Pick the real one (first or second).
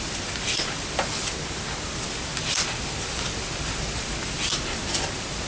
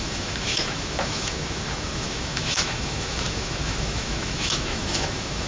first